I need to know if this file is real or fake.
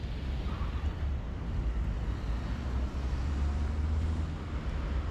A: real